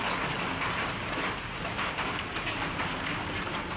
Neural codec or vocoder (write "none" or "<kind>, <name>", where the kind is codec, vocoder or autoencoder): none